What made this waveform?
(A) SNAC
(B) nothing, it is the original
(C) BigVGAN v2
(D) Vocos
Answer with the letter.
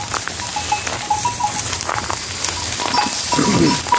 B